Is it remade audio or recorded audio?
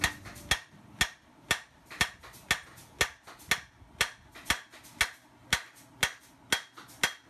recorded